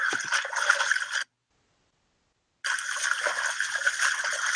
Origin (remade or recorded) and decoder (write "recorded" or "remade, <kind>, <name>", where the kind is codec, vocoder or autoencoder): recorded